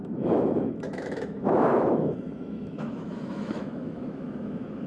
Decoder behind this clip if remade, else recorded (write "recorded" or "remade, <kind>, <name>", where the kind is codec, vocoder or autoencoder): remade, autoencoder, DAC-VAE